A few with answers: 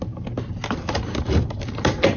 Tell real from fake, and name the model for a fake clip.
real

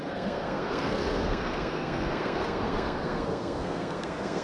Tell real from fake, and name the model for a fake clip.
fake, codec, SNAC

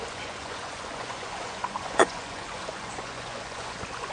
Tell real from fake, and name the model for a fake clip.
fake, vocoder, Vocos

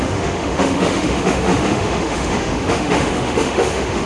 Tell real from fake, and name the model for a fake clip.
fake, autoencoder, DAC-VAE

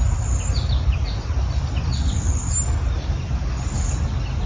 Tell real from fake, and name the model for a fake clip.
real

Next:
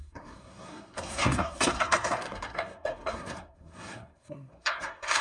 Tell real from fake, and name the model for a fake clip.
fake, codec, SNAC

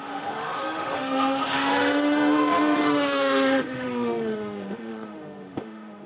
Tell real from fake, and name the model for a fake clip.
fake, autoencoder, DAC-VAE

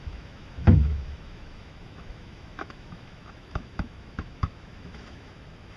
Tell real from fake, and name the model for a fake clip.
fake, autoencoder, DAC-VAE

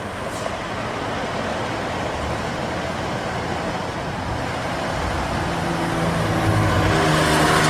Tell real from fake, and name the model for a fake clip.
real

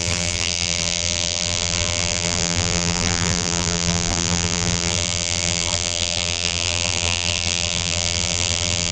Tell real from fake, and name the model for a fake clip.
fake, vocoder, BigVGAN v2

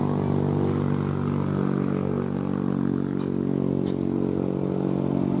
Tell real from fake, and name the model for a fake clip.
real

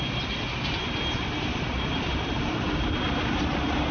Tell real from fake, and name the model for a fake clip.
real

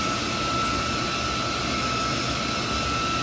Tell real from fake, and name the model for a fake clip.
real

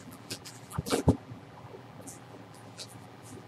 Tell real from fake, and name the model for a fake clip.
fake, vocoder, BigVGAN v2